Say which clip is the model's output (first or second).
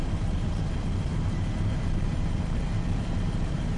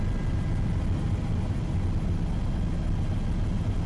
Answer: first